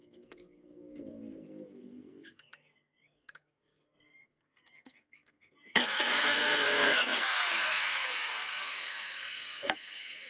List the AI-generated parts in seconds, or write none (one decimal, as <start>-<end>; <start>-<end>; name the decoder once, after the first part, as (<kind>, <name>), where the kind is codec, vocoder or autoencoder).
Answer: 0.0-10.3 (codec, SNAC)